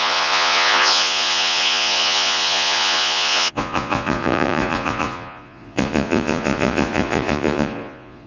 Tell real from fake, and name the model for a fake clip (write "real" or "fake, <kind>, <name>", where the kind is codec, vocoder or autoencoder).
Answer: fake, vocoder, Vocos